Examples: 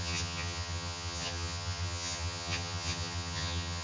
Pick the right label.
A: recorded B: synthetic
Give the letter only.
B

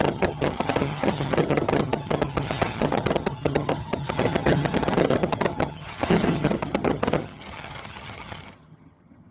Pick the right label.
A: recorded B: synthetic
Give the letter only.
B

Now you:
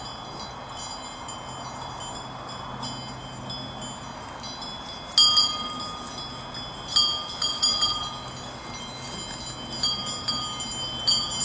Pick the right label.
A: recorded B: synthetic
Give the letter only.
A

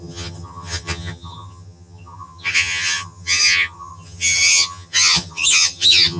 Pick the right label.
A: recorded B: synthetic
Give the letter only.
B